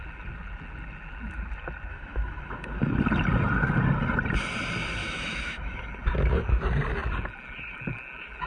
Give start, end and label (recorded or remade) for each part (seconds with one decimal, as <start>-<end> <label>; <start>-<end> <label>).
0.0-1.9 recorded; 1.9-3.0 remade; 3.0-5.0 recorded; 5.0-5.8 remade; 5.8-8.5 recorded